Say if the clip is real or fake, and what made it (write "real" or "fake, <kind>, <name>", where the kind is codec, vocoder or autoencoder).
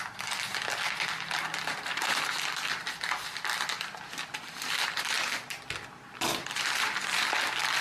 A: real